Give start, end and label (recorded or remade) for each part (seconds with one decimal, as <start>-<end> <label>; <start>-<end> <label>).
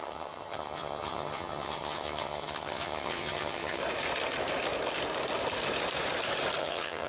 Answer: 0.0-3.8 remade; 3.8-6.6 recorded; 6.6-7.1 remade